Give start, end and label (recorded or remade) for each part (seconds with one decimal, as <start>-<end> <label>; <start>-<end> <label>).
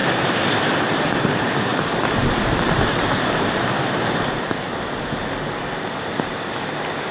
0.0-0.7 remade; 0.7-1.7 recorded; 1.7-3.6 remade; 3.6-7.1 recorded